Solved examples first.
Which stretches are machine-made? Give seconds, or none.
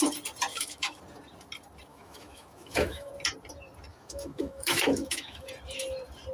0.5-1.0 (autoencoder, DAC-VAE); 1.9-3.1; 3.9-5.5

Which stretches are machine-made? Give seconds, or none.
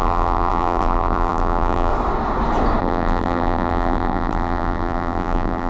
0.0-1.9 (vocoder, BigVGAN v2); 2.8-5.7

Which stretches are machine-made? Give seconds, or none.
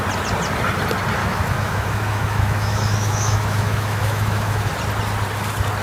1.2-4.7 (autoencoder, DAC-VAE)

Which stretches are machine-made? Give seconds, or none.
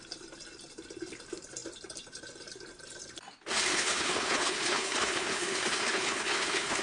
3.7-6.8 (codec, HILCodec)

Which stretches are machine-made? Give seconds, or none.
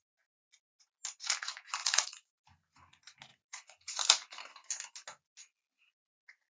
1.8-2.3 (vocoder, Vocos); 3.3-4.0